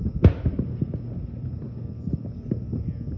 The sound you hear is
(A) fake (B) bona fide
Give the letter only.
B